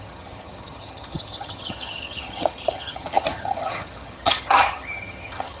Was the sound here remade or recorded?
remade